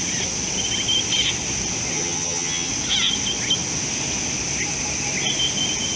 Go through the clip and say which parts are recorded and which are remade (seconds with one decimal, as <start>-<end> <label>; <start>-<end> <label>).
0.0-1.9 recorded; 1.9-2.7 remade; 2.7-6.0 recorded